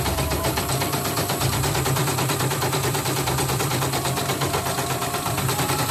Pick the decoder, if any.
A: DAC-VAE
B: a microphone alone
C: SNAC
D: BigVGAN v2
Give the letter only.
D